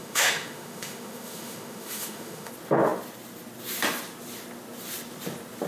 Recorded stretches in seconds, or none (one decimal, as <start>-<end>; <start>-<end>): 2.5-5.7